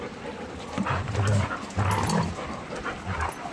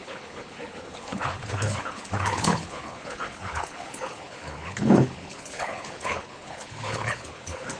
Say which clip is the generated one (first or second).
second